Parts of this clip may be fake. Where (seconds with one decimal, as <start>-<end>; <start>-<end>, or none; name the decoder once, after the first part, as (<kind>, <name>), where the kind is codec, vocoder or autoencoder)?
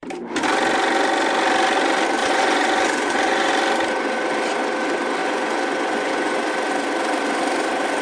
2.2-3.5 (vocoder, Vocos); 5.2-6.5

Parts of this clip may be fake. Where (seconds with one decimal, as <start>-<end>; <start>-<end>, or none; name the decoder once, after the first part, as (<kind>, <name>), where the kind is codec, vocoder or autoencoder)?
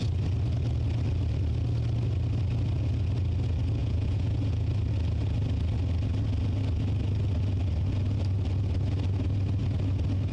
3.8-4.7 (vocoder, Vocos)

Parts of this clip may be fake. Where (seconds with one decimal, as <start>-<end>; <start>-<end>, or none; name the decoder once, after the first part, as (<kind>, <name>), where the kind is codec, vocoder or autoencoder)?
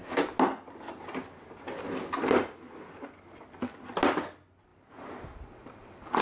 4.7-6.2 (vocoder, BigVGAN v2)